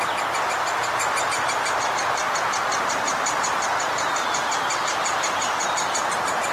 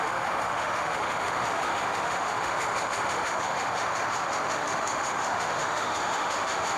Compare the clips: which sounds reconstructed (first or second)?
second